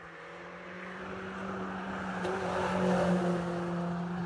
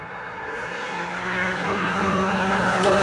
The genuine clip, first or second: first